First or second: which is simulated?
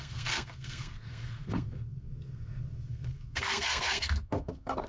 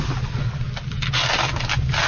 first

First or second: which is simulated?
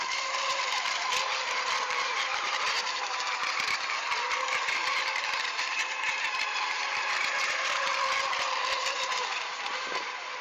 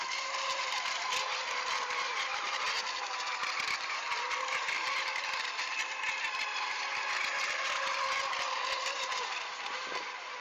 first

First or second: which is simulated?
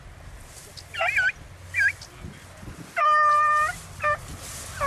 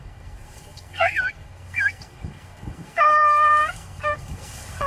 second